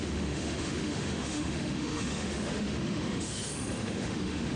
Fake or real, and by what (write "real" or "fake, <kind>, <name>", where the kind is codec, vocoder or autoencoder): fake, autoencoder, DAC-VAE